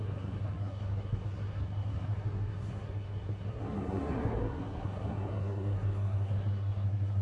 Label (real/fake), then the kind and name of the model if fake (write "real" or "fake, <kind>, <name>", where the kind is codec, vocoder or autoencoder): fake, codec, SNAC